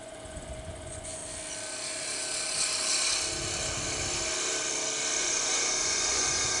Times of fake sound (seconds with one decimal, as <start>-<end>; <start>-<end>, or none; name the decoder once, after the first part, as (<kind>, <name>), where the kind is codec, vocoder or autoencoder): 0.0-1.2 (vocoder, Vocos); 5.2-6.6

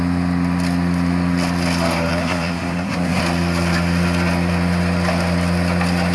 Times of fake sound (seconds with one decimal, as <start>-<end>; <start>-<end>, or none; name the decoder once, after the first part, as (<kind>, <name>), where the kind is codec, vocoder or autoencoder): 2.1-3.2 (codec, SNAC)